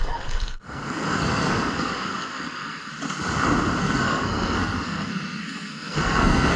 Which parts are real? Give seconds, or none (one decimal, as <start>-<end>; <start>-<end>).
2.9-3.8